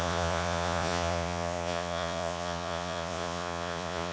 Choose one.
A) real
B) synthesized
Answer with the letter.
B